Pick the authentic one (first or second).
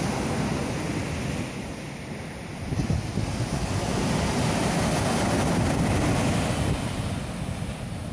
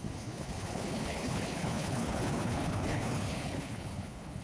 first